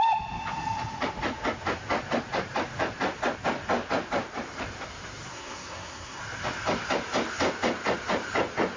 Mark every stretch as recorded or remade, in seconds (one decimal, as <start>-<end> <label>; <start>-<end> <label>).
0.0-5.3 recorded; 5.3-6.2 remade; 6.2-8.8 recorded